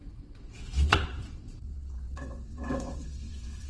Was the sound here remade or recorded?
remade